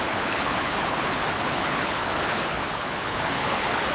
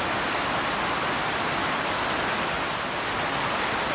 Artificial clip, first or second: first